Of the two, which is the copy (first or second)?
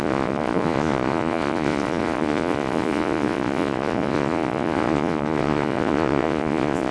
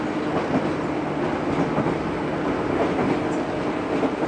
first